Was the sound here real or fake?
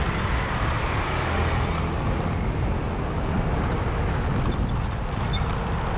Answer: real